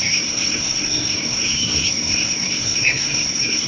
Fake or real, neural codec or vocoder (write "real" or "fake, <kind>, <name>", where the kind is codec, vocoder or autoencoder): fake, codec, SNAC